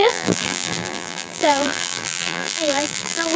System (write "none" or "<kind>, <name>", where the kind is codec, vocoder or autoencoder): vocoder, BigVGAN v2